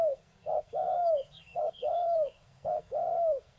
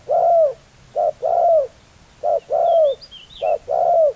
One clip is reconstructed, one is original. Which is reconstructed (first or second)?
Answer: first